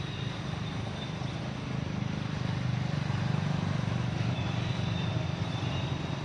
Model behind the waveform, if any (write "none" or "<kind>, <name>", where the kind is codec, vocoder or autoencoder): vocoder, BigVGAN v2